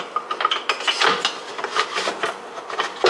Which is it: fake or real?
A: real